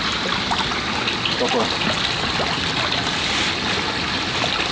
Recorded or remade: recorded